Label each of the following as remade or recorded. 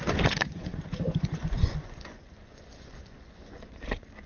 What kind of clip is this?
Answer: remade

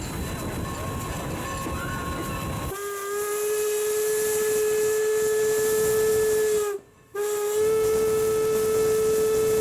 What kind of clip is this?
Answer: recorded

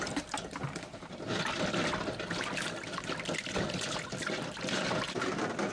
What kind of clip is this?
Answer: recorded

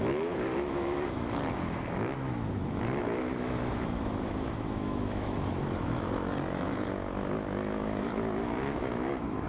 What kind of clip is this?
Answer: remade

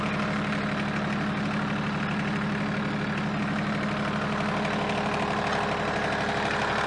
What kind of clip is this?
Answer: recorded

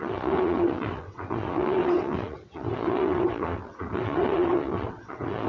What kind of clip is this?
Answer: remade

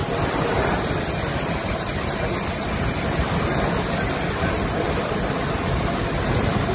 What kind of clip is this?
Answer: recorded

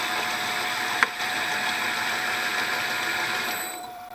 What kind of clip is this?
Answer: remade